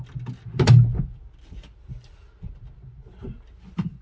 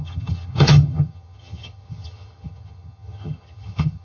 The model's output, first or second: second